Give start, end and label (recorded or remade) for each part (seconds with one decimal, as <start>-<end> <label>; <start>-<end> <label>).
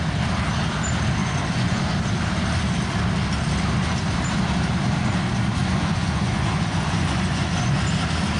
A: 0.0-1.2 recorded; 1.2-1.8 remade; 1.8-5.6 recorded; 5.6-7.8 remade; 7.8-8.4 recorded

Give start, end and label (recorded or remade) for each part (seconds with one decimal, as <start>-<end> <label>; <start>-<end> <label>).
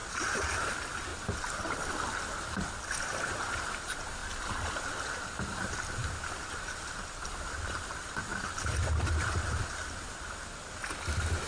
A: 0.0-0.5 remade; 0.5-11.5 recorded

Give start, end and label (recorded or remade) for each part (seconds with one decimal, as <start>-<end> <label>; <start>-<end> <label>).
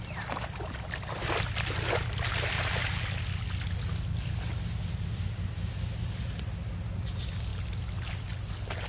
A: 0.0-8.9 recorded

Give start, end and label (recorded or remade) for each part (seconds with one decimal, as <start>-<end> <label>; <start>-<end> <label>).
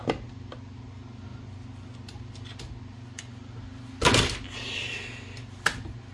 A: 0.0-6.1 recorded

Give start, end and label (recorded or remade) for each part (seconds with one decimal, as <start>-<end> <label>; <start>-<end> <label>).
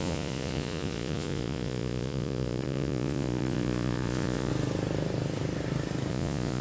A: 0.0-4.5 remade; 4.5-6.1 recorded; 6.1-6.6 remade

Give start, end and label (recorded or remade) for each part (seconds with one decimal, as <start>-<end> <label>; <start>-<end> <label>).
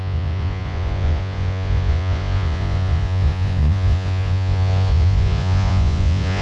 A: 0.0-6.4 remade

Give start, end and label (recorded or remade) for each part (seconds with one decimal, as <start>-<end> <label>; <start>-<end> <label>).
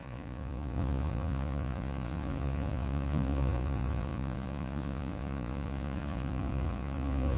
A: 0.0-7.4 remade